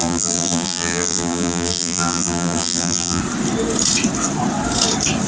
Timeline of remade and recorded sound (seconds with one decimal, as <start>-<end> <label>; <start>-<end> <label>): 0.0-3.2 remade; 3.2-5.3 recorded